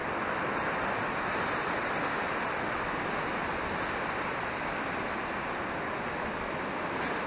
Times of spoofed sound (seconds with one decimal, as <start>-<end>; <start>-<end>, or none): none